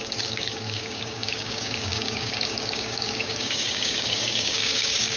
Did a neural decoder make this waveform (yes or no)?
yes